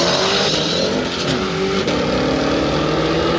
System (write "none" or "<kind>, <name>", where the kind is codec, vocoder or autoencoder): none